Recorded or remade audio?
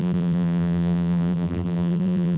remade